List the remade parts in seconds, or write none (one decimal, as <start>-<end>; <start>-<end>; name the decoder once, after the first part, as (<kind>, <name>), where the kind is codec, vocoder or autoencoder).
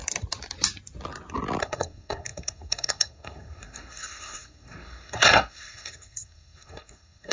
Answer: 1.6-7.3 (codec, SNAC)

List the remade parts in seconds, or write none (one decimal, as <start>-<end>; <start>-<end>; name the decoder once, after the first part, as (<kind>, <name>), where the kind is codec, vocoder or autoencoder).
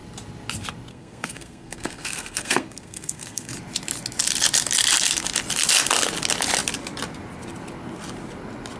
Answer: 0.9-3.5 (codec, SNAC)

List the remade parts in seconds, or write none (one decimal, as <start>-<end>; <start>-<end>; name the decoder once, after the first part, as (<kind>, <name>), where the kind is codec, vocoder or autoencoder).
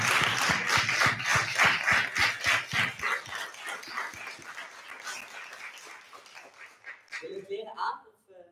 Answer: none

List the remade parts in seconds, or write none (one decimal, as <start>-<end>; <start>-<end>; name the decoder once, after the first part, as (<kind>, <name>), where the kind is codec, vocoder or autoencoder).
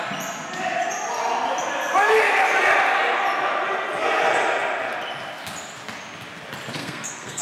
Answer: 6.8-7.4 (codec, SNAC)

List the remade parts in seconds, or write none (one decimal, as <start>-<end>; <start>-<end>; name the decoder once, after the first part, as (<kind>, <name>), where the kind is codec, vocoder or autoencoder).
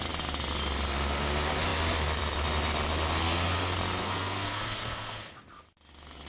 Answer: 4.0-5.2 (codec, SNAC)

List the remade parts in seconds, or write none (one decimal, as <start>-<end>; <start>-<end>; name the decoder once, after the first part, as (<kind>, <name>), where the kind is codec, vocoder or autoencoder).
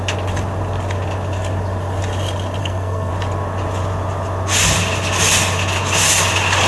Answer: 2.6-3.1 (codec, SNAC)